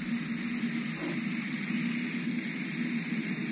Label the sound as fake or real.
real